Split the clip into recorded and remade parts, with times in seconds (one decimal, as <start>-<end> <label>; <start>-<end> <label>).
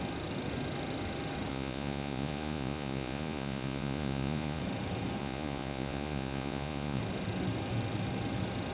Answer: 0.0-1.5 recorded; 1.5-4.6 remade; 4.6-5.2 recorded; 5.2-7.0 remade; 7.0-8.7 recorded